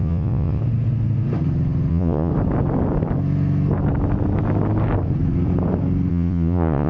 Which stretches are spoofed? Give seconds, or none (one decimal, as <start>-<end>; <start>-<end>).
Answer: 0.0-0.6; 1.9-2.3; 6.1-6.9